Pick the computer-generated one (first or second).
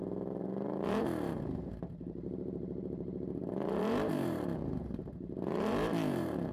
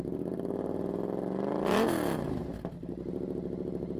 first